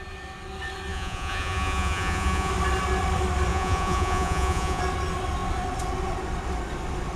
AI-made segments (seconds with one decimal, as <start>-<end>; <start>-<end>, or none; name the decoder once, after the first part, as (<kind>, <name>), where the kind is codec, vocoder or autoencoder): 0.9-2.5 (vocoder, Vocos); 3.5-4.8